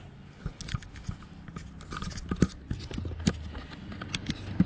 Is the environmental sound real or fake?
real